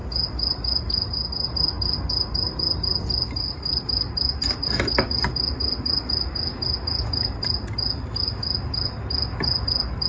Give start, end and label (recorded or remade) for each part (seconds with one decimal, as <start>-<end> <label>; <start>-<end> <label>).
0.0-10.1 recorded